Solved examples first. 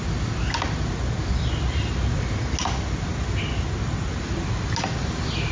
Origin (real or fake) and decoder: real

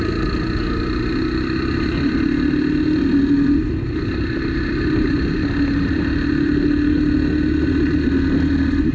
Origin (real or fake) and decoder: real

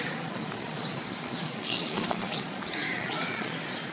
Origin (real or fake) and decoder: fake, vocoder, Vocos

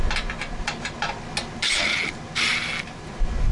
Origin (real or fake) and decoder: real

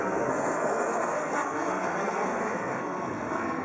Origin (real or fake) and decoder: fake, codec, SNAC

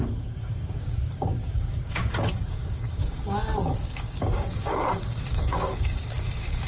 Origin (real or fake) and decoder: fake, codec, DAC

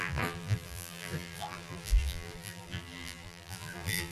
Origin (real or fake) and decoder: fake, vocoder, BigVGAN v2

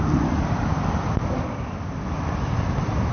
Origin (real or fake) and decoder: real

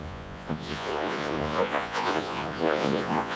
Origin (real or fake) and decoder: fake, vocoder, Vocos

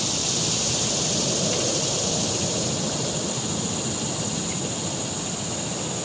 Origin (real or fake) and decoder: real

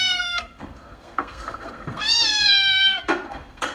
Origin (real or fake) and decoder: fake, codec, SNAC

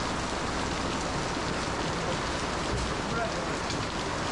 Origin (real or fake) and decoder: real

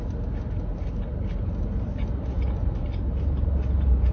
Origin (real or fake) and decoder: real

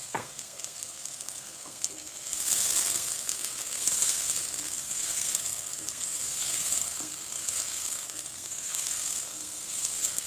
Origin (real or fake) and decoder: fake, codec, SNAC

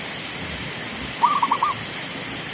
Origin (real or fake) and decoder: real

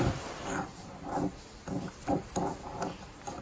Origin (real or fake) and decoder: real